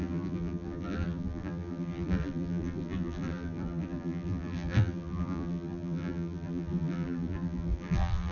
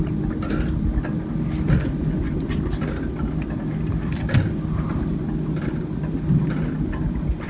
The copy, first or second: first